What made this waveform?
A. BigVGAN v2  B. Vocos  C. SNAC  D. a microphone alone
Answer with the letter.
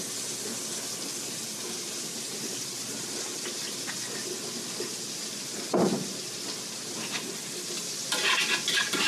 D